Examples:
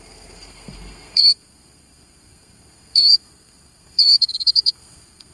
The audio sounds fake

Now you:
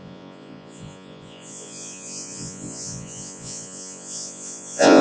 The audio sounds fake